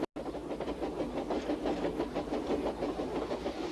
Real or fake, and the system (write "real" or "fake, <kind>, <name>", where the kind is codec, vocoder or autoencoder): real